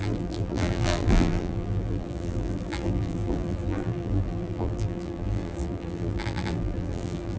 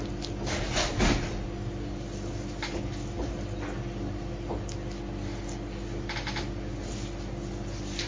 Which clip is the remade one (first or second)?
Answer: first